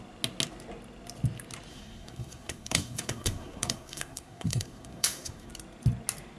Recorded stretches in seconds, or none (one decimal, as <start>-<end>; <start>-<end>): 0.0-1.7; 5.5-6.4